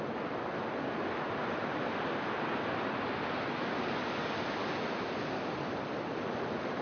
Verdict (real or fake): real